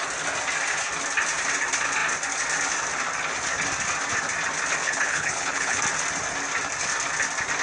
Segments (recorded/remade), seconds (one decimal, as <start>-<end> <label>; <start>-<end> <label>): 0.0-4.8 recorded; 4.8-5.8 remade; 5.8-7.6 recorded